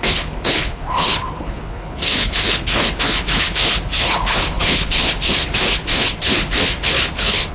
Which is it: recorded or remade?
remade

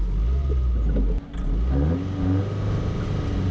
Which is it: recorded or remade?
recorded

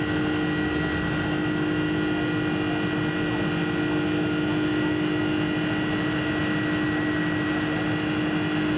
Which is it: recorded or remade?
recorded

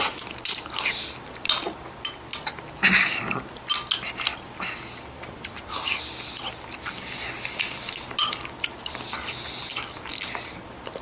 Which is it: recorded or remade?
recorded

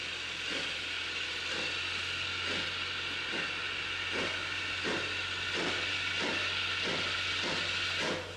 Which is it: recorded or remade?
recorded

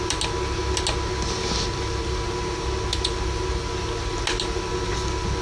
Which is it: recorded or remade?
recorded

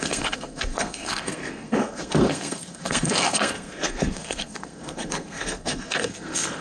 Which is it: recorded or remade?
remade